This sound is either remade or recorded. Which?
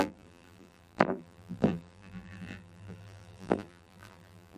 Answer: remade